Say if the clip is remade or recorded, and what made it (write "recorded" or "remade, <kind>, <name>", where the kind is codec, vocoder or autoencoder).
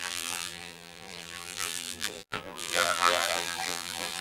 remade, vocoder, BigVGAN v2